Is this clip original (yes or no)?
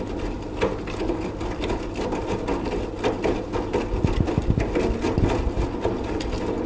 yes